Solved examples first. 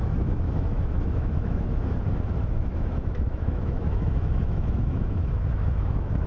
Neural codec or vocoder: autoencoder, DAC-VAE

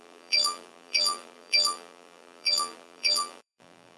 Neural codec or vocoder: vocoder, BigVGAN v2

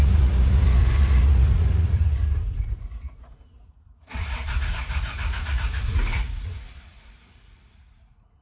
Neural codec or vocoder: vocoder, Vocos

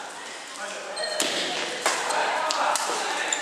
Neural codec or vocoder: none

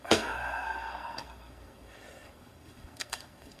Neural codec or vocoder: codec, SNAC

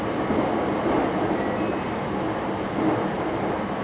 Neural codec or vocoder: none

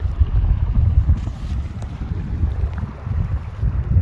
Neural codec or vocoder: none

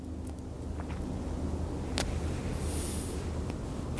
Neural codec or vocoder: none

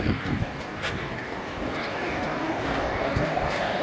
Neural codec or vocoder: codec, DAC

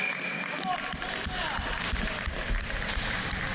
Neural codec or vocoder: none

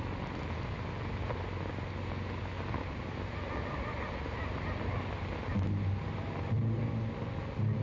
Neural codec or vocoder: none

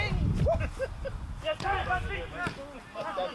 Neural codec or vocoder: none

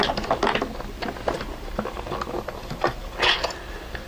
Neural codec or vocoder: none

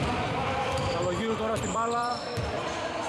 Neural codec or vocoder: vocoder, BigVGAN v2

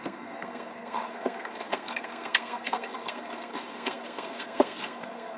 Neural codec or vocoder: codec, SNAC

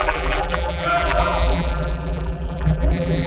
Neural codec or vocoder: vocoder, BigVGAN v2